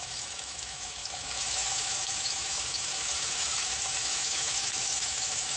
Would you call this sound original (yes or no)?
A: no